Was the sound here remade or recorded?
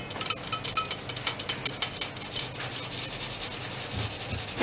recorded